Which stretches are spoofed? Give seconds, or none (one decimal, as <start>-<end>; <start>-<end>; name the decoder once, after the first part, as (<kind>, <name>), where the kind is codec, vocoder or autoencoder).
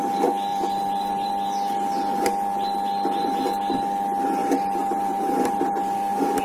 0.5-1.3 (vocoder, BigVGAN v2); 4.4-6.4